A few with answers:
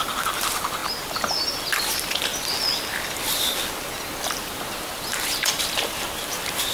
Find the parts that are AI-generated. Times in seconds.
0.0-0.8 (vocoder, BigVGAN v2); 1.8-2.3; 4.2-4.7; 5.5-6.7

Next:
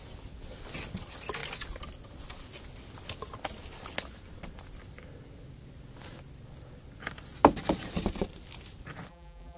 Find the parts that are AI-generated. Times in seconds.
9.1-9.6 (vocoder, BigVGAN v2)

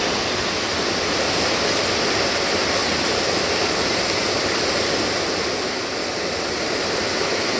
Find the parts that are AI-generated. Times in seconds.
2.8-7.6 (vocoder, BigVGAN v2)